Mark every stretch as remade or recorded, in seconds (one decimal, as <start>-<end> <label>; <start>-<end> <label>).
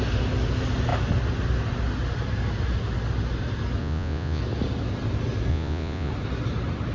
0.0-3.8 recorded; 3.8-4.4 remade; 4.4-5.5 recorded; 5.5-6.1 remade; 6.1-6.9 recorded